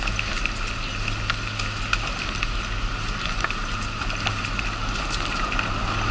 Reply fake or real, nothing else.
real